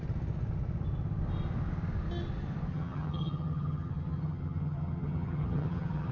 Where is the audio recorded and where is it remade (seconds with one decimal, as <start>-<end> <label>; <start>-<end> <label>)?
0.0-2.7 recorded; 2.7-6.1 remade